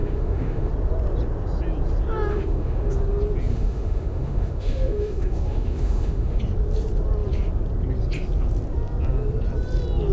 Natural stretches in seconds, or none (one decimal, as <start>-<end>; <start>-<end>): 0.7-2.3; 2.9-3.5; 6.4-10.1